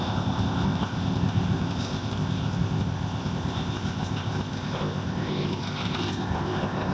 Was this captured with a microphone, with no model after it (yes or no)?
no